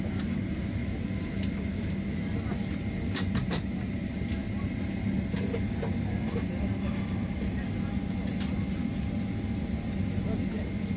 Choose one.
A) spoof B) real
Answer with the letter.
B